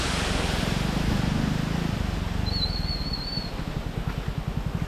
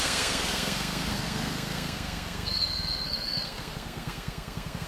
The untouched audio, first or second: first